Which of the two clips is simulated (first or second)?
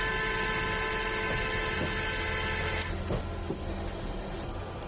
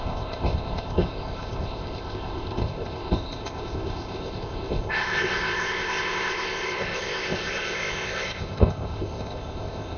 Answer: second